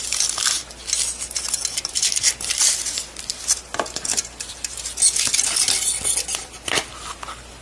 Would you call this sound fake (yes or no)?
no